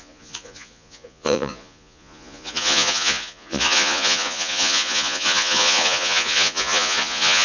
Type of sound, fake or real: fake